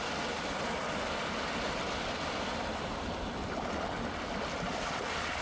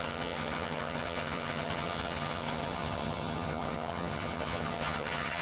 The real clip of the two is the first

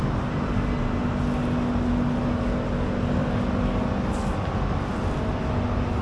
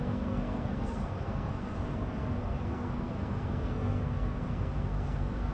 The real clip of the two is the first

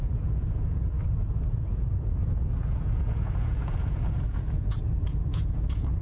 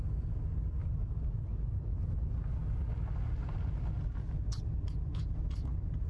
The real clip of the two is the second